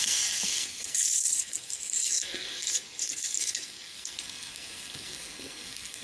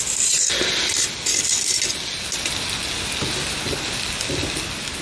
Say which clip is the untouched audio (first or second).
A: second